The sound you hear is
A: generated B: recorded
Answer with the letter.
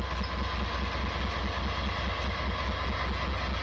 B